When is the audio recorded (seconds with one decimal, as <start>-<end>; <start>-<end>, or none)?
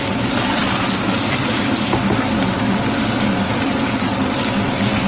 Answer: 0.0-5.1